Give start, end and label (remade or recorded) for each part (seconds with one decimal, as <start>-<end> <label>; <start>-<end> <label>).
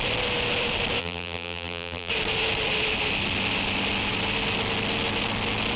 0.0-1.0 recorded; 1.0-2.1 remade; 2.1-5.8 recorded